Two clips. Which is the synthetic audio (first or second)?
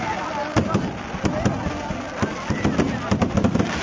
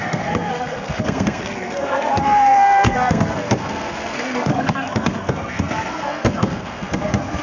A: second